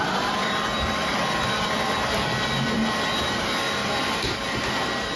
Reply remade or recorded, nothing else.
recorded